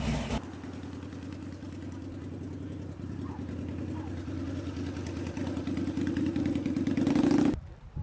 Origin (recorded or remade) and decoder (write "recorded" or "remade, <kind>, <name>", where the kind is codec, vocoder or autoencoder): recorded